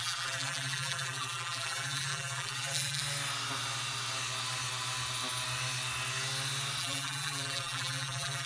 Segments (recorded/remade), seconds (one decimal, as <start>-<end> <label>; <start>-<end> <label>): 0.0-3.0 remade; 3.0-6.8 recorded; 6.8-8.5 remade